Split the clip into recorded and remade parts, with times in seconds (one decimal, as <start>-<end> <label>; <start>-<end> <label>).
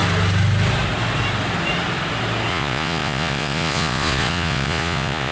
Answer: 0.0-2.5 recorded; 2.5-5.3 remade